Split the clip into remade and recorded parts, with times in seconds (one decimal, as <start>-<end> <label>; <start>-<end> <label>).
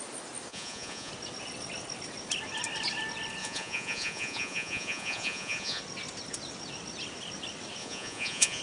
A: 0.0-0.5 recorded; 0.5-1.1 remade; 1.1-3.4 recorded; 3.4-5.8 remade; 5.8-7.8 recorded; 7.8-8.6 remade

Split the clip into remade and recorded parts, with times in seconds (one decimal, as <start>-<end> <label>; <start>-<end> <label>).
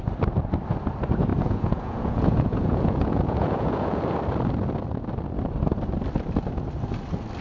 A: 0.0-1.3 recorded; 1.3-4.2 remade; 4.2-7.4 recorded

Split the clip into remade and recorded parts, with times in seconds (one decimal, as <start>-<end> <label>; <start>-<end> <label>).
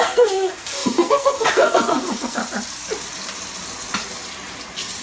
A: 0.0-2.4 remade; 2.4-5.0 recorded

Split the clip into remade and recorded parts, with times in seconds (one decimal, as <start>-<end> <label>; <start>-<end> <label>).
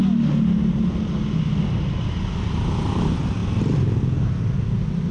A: 0.0-5.1 recorded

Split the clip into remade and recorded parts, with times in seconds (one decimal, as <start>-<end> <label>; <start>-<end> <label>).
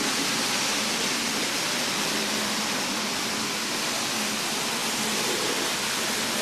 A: 0.0-6.4 recorded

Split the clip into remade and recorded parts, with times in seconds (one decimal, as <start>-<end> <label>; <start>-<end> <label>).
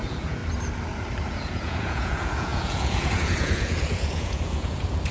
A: 0.0-0.4 remade; 0.4-1.3 recorded; 1.3-5.1 remade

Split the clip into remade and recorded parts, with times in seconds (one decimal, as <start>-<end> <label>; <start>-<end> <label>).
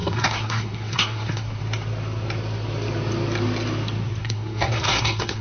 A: 0.0-1.6 remade; 1.6-4.2 recorded; 4.2-5.4 remade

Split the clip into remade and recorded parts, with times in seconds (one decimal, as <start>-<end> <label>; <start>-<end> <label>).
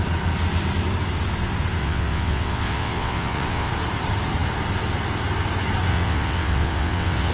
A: 0.0-1.8 recorded; 1.8-3.7 remade; 3.7-5.9 recorded; 5.9-7.3 remade